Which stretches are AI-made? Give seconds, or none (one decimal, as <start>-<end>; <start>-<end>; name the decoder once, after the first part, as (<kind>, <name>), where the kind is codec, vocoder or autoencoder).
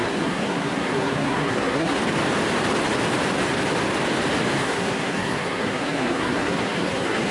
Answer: 0.0-2.0 (codec, SNAC); 4.6-7.3